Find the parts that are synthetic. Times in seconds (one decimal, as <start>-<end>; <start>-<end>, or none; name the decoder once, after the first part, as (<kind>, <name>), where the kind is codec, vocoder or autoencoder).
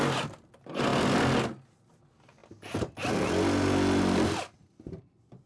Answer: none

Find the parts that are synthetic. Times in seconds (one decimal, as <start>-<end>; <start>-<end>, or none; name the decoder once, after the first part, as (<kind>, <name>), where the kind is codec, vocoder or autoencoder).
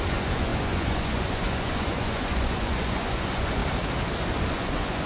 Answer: 0.0-3.6 (vocoder, Vocos); 4.5-5.1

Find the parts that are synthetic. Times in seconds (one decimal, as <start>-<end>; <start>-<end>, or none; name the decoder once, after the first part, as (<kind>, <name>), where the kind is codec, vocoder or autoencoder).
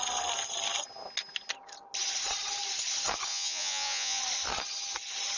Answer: 3.3-4.2 (vocoder, Vocos)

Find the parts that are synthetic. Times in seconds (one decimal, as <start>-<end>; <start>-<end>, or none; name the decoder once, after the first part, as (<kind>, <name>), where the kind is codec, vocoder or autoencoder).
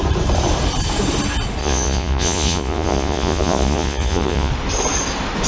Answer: 1.6-4.5 (vocoder, Vocos)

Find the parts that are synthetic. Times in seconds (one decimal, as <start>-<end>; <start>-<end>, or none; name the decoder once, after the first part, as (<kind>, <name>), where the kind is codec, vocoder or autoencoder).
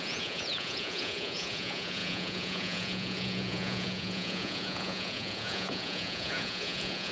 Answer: 0.0-7.1 (vocoder, Vocos)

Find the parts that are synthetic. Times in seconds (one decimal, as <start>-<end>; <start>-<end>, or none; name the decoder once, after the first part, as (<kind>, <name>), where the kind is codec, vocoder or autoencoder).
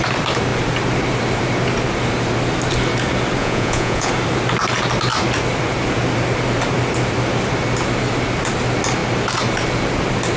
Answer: 3.4-4.1 (vocoder, Vocos)